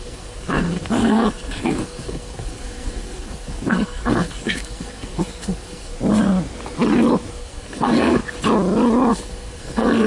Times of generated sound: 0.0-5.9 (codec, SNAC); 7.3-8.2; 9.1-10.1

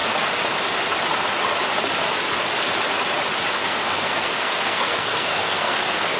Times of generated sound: 3.6-6.2 (codec, SNAC)

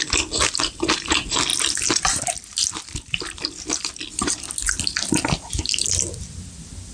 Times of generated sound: none

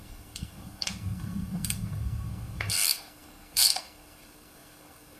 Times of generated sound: 0.0-5.2 (codec, SNAC)